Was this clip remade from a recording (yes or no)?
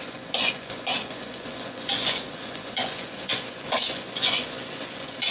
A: yes